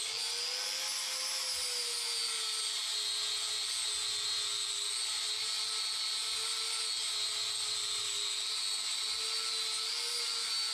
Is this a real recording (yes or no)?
yes